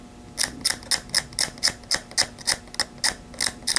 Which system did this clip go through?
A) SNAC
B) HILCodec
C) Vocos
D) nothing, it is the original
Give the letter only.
D